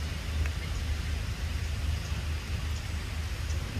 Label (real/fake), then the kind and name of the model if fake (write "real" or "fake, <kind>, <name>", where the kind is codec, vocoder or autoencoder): real